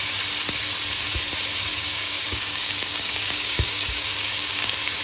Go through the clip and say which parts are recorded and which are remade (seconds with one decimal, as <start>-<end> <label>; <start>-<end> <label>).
0.0-1.7 recorded; 1.7-5.0 remade